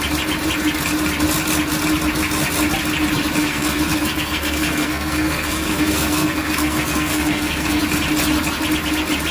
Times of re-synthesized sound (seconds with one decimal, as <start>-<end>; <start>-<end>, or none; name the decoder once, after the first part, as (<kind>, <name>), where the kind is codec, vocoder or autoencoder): 3.4-7.8 (codec, SNAC)